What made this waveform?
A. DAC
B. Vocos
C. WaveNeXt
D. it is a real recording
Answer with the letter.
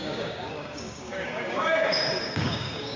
A